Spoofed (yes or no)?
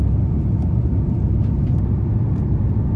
no